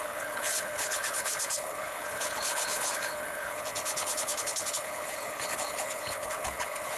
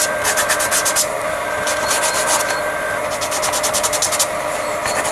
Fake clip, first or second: first